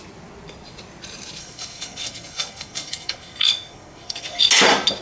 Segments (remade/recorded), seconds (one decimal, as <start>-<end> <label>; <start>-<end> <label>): 0.0-1.4 recorded; 1.4-4.4 remade; 4.4-5.0 recorded